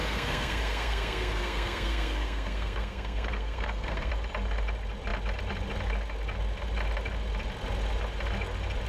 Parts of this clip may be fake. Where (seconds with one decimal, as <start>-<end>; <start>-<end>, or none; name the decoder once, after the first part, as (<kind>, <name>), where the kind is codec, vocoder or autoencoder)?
0.0-4.1 (codec, SNAC)